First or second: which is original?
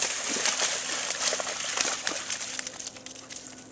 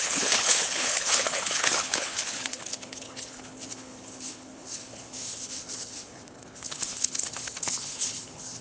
first